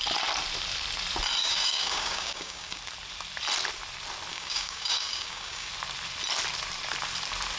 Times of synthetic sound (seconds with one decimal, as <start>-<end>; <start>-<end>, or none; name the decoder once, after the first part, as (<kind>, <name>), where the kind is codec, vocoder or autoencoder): 1.4-2.8 (codec, DAC); 4.3-5.7